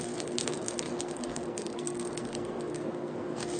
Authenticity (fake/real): fake